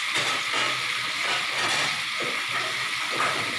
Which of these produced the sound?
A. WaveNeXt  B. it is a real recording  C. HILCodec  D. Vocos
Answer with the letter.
B